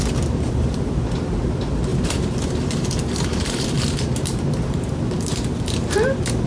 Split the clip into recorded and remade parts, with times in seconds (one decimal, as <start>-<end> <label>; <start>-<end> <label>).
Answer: 0.0-1.9 recorded; 1.9-5.8 remade; 5.8-6.5 recorded